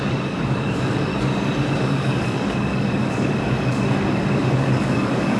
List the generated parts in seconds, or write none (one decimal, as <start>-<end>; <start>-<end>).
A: 0.0-1.1; 1.8-5.4